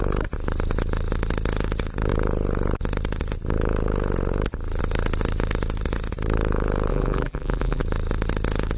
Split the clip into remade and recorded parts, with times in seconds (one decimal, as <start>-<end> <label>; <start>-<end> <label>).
0.0-6.9 recorded; 6.9-7.8 remade; 7.8-8.8 recorded